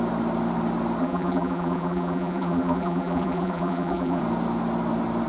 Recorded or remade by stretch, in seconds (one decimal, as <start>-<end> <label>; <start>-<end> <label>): 0.0-1.0 recorded; 1.0-4.2 remade; 4.2-5.3 recorded